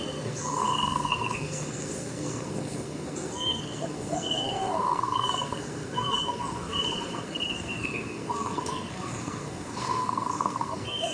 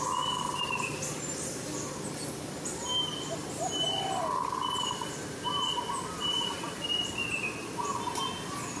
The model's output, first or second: first